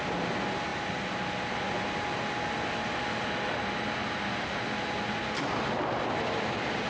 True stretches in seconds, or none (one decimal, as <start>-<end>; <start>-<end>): 0.0-6.9